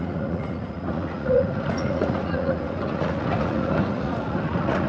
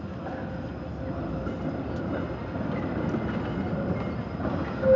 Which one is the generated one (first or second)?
first